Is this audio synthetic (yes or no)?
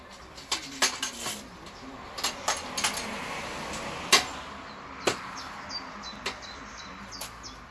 no